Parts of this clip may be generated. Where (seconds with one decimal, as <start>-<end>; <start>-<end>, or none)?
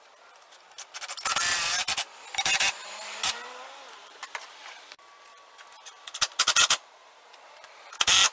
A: 2.8-7.2